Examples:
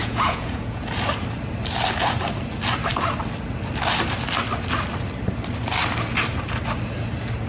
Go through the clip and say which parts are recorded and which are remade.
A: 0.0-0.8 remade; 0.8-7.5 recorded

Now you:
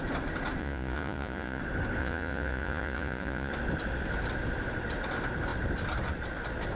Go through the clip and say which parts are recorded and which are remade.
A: 0.0-0.6 recorded; 0.6-1.6 remade; 1.6-2.0 recorded; 2.0-3.5 remade; 3.5-6.8 recorded

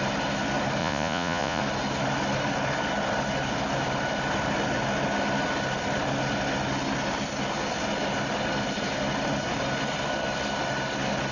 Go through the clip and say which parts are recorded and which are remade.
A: 0.0-0.8 recorded; 0.8-1.6 remade; 1.6-11.3 recorded

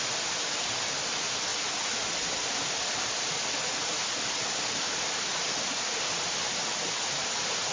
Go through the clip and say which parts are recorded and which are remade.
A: 0.0-7.7 recorded

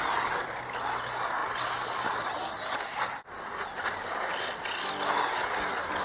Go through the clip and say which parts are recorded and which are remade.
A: 0.0-6.0 recorded

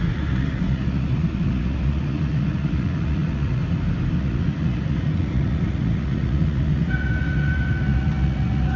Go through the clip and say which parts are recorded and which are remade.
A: 0.0-3.6 remade; 3.6-4.2 recorded; 4.2-8.8 remade

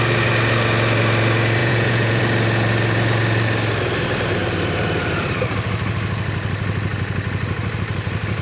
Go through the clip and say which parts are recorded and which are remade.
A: 0.0-1.6 recorded; 1.6-2.2 remade; 2.2-8.4 recorded